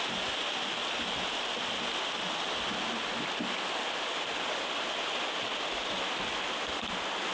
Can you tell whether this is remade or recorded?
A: recorded